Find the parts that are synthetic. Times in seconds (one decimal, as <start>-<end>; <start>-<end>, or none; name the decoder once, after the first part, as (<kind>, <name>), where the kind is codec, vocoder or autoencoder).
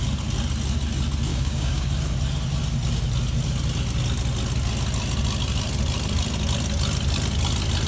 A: 1.3-1.9 (codec, DAC)